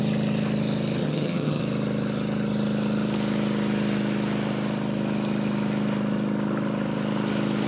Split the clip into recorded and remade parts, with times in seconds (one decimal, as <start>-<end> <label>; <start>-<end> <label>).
0.0-1.0 recorded; 1.0-1.6 remade; 1.6-7.7 recorded